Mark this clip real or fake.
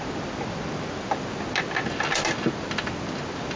real